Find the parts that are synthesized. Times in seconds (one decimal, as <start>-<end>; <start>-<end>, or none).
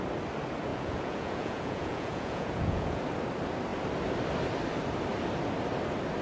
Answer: 0.7-3.0